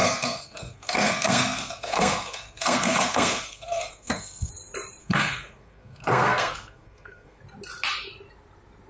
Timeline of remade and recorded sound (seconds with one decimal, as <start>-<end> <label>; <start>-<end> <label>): 0.0-4.5 remade; 4.5-5.0 recorded; 5.0-7.4 remade; 7.4-8.9 recorded